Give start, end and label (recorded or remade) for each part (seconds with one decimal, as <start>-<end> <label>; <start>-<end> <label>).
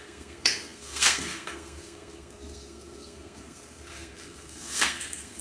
0.0-5.4 remade